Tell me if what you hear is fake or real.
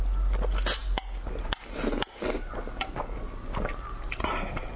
real